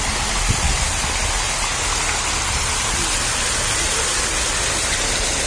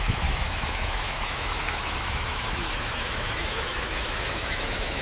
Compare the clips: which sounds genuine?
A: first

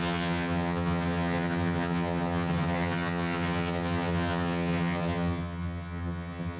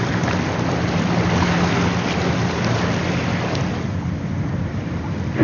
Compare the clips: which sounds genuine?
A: second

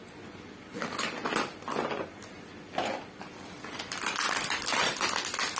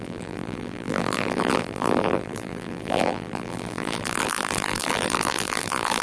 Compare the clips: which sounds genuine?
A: first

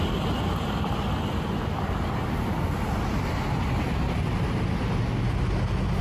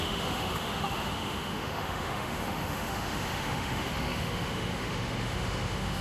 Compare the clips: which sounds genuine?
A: first